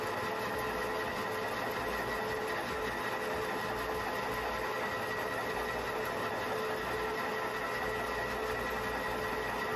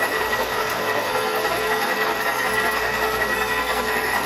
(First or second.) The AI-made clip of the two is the second